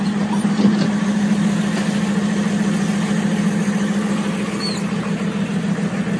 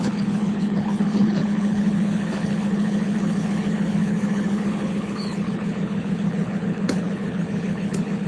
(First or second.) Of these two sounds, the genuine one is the first